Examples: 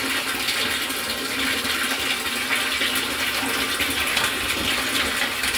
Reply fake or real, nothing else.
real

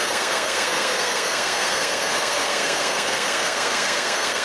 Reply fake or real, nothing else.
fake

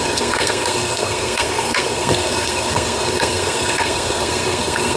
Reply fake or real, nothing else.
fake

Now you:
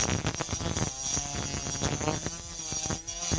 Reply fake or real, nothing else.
real